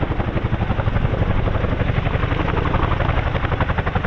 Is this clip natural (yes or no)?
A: yes